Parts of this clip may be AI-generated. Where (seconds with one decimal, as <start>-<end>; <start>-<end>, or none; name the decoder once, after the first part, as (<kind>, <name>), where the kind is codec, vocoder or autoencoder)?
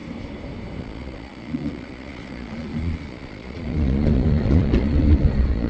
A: 0.8-5.7 (vocoder, Vocos)